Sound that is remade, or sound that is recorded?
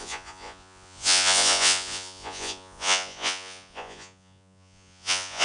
remade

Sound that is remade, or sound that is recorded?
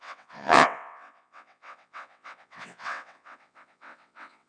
remade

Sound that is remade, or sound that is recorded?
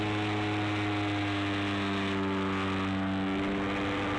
recorded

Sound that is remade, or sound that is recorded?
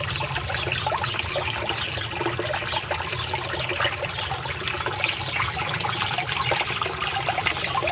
recorded